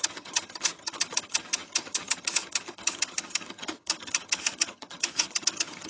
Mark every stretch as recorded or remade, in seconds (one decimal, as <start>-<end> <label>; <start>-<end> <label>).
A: 0.0-5.9 remade